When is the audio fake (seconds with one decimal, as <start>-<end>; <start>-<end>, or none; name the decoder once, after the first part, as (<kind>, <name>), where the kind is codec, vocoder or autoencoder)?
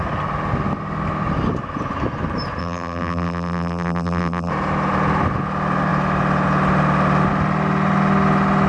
2.6-4.5 (vocoder, BigVGAN v2)